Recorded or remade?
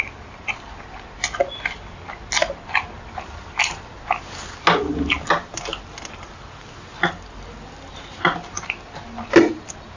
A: recorded